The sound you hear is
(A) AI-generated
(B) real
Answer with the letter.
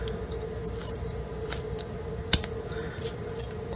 B